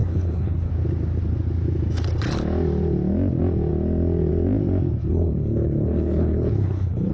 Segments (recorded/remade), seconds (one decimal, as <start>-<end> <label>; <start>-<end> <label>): 0.0-0.7 remade; 0.7-5.0 recorded; 5.0-7.1 remade